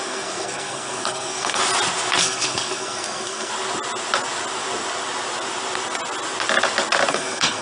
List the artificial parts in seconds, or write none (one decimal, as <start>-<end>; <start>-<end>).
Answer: 0.0-1.6; 2.2-3.5; 7.1-7.6